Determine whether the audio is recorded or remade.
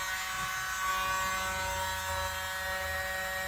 recorded